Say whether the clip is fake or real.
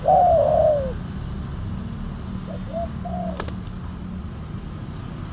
real